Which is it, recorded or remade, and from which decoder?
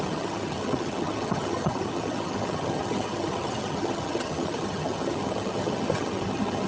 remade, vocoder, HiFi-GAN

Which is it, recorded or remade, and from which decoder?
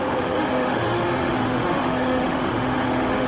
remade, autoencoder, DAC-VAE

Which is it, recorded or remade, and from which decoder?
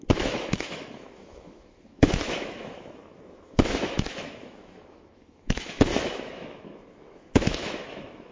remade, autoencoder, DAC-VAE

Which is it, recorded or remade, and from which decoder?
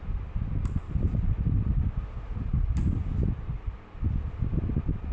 recorded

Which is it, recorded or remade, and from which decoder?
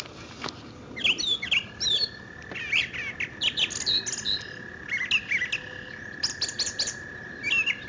recorded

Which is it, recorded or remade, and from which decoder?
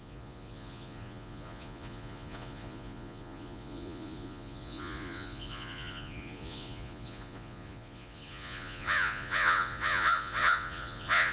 remade, vocoder, Vocos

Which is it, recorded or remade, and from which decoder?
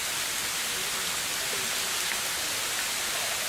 recorded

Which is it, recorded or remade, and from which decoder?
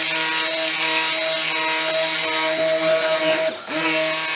recorded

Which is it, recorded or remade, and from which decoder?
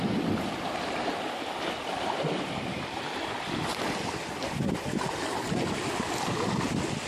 recorded